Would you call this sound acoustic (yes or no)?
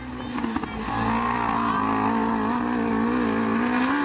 yes